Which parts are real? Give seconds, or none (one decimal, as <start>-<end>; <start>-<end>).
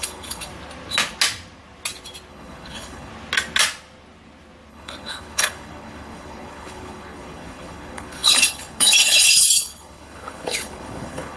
0.5-2.3; 3.1-4.7